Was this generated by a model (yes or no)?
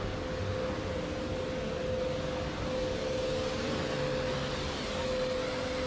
no